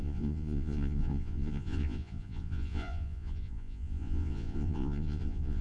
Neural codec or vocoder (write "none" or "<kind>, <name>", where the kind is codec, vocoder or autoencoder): vocoder, Vocos